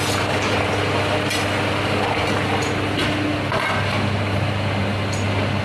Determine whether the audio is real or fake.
real